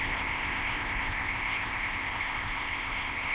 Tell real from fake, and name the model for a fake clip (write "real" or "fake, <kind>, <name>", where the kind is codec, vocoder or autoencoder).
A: fake, codec, ZipCodec